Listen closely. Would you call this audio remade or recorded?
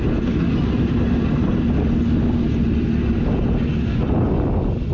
recorded